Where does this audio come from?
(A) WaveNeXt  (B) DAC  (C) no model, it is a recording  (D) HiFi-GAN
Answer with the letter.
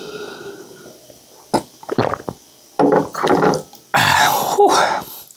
C